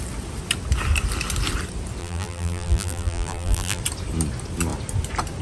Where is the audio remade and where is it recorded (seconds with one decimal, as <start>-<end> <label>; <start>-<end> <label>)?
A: 0.0-2.0 recorded; 2.0-3.8 remade; 3.8-5.4 recorded